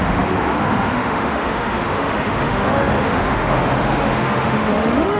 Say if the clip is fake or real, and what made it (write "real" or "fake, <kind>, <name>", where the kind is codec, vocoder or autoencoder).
fake, autoencoder, DAC-VAE